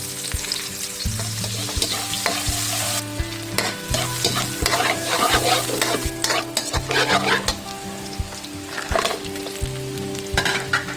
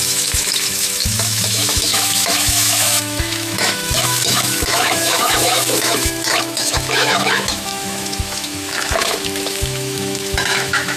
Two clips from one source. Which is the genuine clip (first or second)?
first